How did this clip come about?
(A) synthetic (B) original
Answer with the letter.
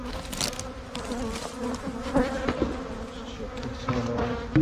B